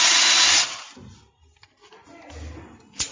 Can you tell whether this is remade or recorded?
recorded